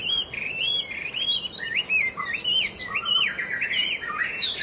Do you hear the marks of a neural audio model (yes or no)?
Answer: no